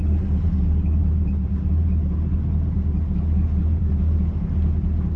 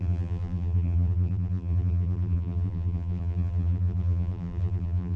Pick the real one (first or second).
first